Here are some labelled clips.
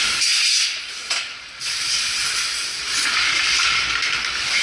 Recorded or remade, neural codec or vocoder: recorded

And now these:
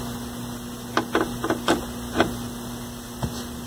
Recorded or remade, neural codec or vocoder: recorded